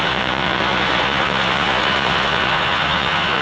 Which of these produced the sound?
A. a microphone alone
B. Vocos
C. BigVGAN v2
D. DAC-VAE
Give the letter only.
B